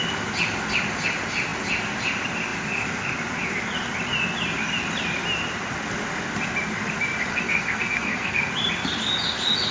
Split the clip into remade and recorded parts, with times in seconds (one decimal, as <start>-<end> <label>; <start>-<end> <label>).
0.0-7.3 recorded; 7.3-8.5 remade; 8.5-9.7 recorded